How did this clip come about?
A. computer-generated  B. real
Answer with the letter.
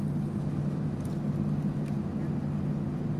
B